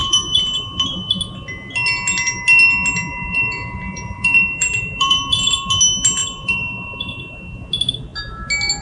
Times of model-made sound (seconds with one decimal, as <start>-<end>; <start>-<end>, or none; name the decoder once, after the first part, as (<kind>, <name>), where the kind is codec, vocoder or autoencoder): 0.0-1.0 (vocoder, BigVGAN v2); 3.1-5.7; 6.2-7.4